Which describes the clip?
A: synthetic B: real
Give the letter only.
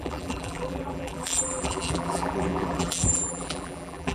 A